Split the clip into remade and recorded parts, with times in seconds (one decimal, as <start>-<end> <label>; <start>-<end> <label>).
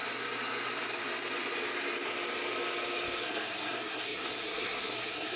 0.0-3.2 recorded; 3.2-5.4 remade